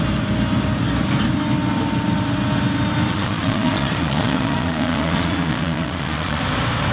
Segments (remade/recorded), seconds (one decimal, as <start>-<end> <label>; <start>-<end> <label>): 0.0-3.1 recorded; 3.1-6.4 remade; 6.4-6.9 recorded